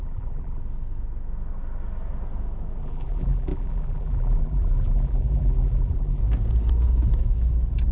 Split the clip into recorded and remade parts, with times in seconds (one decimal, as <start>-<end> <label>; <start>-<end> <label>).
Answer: 0.0-0.6 remade; 0.6-2.8 recorded; 2.8-6.2 remade; 6.2-7.9 recorded

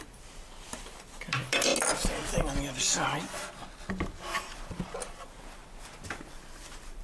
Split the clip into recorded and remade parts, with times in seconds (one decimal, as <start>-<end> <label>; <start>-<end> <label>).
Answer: 0.0-1.7 remade; 1.7-3.9 recorded; 3.9-5.6 remade; 5.6-6.3 recorded; 6.3-7.0 remade

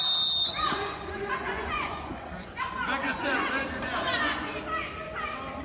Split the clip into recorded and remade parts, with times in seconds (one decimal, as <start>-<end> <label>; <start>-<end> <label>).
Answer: 0.0-0.4 recorded; 0.4-2.6 remade; 2.6-3.0 recorded; 3.0-4.5 remade; 4.5-5.6 recorded

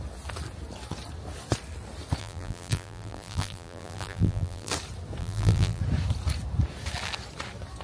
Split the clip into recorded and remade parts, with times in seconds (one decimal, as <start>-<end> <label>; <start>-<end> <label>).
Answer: 0.0-2.2 recorded; 2.2-4.7 remade; 4.7-5.2 recorded; 5.2-5.8 remade; 5.8-7.8 recorded